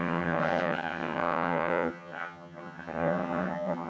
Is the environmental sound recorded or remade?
remade